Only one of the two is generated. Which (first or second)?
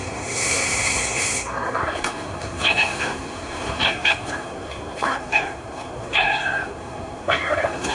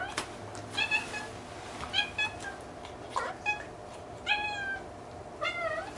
first